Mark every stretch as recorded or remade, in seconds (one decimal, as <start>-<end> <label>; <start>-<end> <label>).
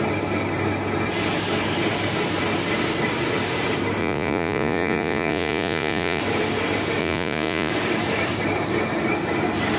0.0-4.0 recorded; 4.0-6.2 remade; 6.2-7.0 recorded; 7.0-7.7 remade; 7.7-9.8 recorded